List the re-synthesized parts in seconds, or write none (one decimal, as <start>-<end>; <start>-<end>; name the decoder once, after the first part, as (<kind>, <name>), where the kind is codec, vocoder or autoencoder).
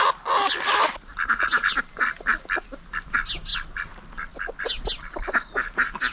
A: none